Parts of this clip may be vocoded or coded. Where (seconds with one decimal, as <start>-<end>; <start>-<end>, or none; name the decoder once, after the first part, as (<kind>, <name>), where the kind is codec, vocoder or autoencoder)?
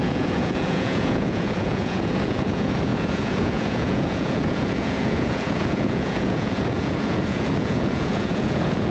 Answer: 0.0-8.9 (vocoder, Vocos)